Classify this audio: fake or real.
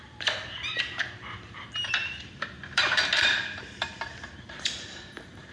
fake